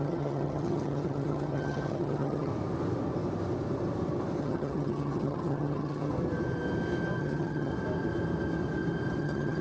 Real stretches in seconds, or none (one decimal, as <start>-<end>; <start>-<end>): 2.5-4.4; 6.1-7.2; 7.7-9.2